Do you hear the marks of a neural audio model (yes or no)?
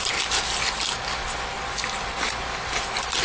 no